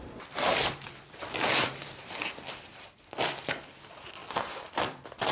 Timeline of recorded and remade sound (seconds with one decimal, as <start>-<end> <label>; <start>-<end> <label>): 0.0-4.2 remade; 4.2-4.8 recorded; 4.8-5.3 remade